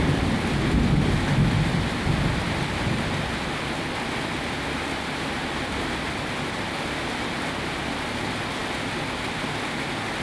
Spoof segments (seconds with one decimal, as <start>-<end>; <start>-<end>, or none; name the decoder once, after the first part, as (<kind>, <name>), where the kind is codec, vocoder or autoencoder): none